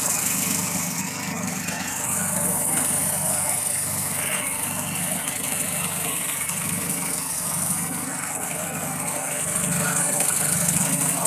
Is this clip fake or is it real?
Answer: fake